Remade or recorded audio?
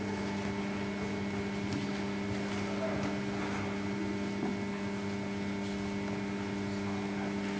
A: recorded